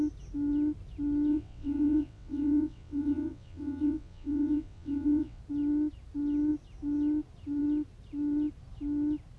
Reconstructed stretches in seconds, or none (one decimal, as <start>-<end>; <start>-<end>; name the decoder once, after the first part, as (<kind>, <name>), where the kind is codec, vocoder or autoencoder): 1.3-5.4 (vocoder, WaveNeXt)